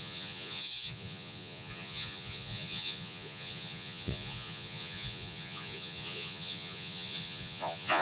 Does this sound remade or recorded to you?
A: remade